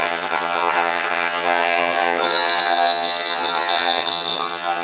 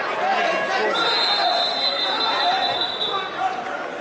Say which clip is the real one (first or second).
second